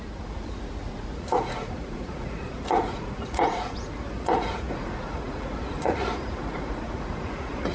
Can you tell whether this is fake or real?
fake